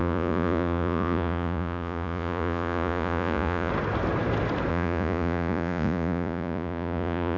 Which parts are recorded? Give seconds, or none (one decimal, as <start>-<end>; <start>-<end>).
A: 3.7-4.7